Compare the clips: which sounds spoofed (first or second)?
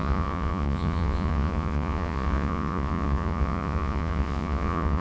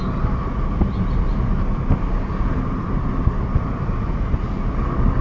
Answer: first